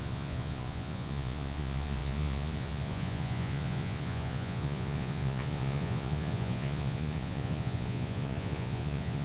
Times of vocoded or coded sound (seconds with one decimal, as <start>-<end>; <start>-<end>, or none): 0.0-9.2